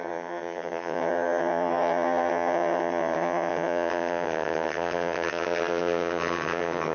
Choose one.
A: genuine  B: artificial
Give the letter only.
B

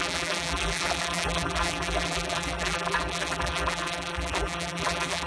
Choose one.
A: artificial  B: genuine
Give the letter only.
A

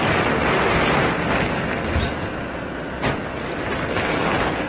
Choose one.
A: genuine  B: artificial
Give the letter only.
A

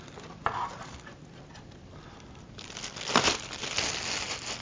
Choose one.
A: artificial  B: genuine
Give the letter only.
B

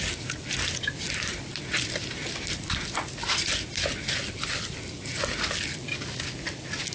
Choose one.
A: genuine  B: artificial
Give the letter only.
A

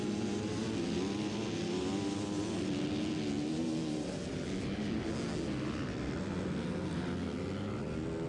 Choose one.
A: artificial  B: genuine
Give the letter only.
B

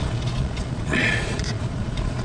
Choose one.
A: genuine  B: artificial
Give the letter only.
B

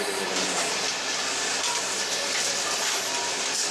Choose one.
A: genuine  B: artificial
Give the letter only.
A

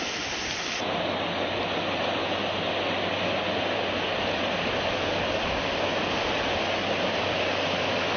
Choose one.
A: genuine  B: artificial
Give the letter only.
A